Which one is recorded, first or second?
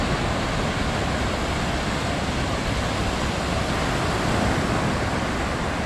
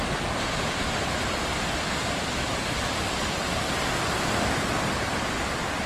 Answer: first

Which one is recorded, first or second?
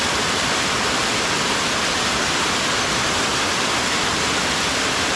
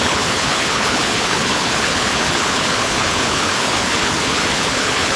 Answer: first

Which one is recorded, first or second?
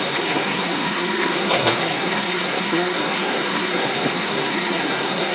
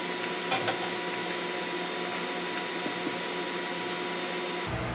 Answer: second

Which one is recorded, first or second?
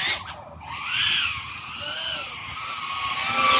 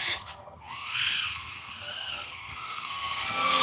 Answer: first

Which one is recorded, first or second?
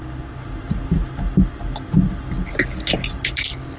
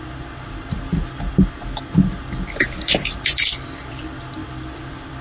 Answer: first